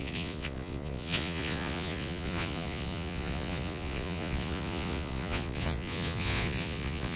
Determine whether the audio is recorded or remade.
remade